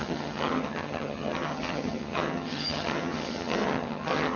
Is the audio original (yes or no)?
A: no